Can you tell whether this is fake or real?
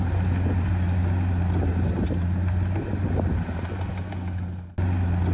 real